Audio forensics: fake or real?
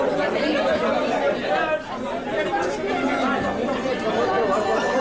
real